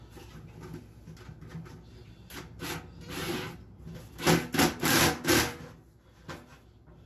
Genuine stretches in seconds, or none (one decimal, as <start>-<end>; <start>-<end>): 0.0-7.1